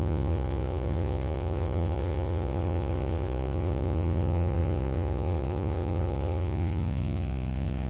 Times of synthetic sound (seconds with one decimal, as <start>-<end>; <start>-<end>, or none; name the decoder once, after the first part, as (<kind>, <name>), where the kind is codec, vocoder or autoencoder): 0.0-7.9 (vocoder, Vocos)